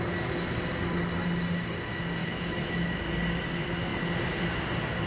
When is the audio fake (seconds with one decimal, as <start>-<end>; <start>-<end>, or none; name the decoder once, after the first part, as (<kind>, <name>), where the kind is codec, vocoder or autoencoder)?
2.2-3.0 (autoencoder, DAC-VAE)